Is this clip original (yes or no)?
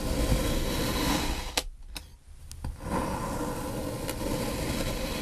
yes